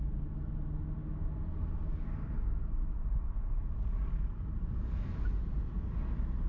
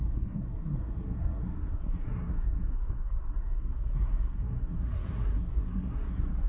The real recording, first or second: first